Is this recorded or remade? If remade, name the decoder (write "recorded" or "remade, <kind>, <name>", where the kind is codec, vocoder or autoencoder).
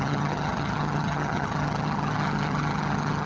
remade, vocoder, HiFi-GAN